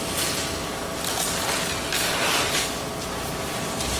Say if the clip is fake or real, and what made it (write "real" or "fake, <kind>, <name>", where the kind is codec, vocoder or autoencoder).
real